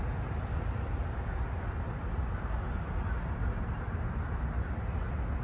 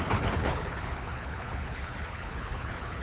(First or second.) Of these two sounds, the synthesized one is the second